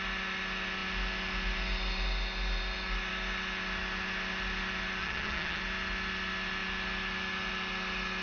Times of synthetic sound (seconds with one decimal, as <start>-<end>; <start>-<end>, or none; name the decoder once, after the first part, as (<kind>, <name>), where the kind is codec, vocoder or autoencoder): 5.0-5.6 (vocoder, HiFi-GAN)

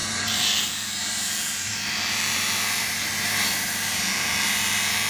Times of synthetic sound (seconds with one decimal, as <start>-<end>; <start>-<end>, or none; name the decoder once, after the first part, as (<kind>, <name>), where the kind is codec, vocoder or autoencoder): 0.0-5.1 (vocoder, BigVGAN v2)

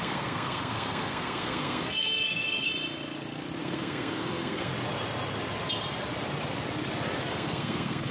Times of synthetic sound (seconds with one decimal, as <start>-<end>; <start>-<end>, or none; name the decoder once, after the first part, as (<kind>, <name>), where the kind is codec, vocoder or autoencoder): 0.0-2.7 (codec, SNAC); 3.6-4.7; 7.3-8.1